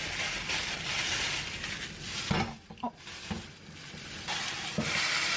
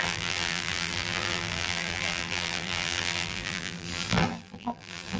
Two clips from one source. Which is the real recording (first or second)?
first